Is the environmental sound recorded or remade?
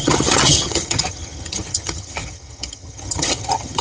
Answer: remade